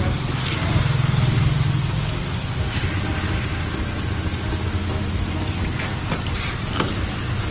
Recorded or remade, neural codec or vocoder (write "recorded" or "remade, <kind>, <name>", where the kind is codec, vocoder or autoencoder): recorded